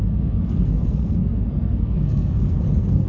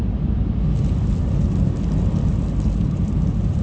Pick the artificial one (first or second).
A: first